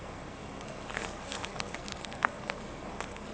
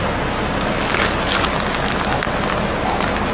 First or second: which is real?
second